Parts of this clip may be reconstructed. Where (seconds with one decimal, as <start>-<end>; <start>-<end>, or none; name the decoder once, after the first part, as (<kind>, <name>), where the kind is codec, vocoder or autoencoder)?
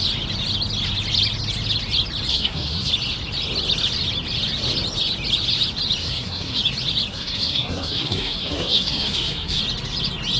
2.3-2.9 (codec, SNAC); 6.0-6.6; 7.1-9.6